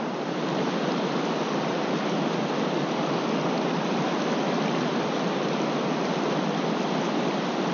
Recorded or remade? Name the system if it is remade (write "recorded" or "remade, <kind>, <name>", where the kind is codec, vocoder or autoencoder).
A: remade, vocoder, BigVGAN v2